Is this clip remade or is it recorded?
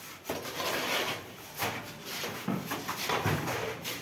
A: recorded